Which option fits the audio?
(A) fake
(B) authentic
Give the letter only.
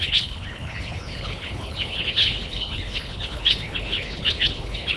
A